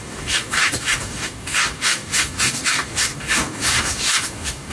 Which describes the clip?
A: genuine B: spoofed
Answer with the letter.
B